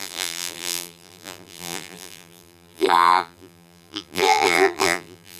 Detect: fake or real fake